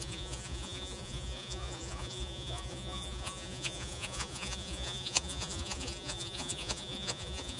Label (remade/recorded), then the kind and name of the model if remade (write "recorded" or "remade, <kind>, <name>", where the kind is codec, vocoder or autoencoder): remade, vocoder, Vocos